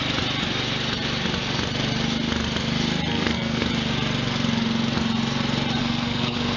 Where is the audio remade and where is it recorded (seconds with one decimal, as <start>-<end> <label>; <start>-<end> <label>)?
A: 0.0-3.1 recorded; 3.1-3.7 remade; 3.7-5.8 recorded; 5.8-6.6 remade